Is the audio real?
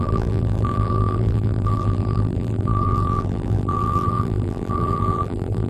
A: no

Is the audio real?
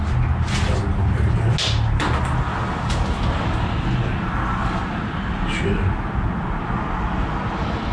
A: yes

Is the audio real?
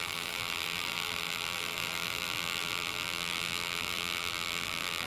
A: no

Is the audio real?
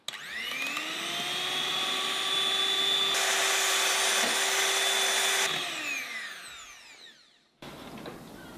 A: yes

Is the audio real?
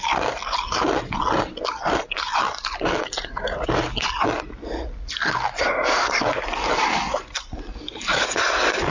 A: yes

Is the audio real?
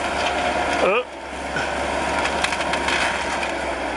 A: yes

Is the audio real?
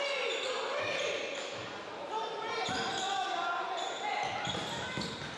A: yes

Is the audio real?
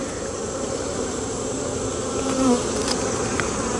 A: no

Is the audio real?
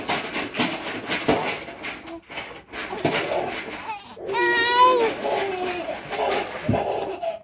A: yes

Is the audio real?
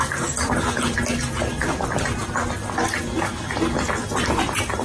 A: yes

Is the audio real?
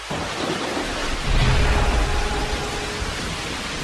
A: yes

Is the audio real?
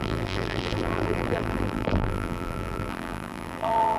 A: no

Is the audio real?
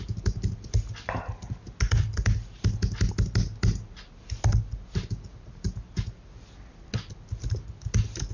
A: yes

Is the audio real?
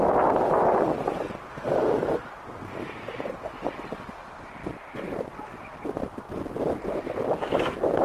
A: yes